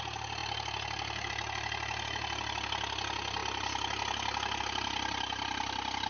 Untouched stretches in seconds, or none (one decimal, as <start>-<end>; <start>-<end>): 0.0-6.1